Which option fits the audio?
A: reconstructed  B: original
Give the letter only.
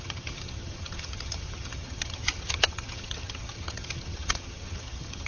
A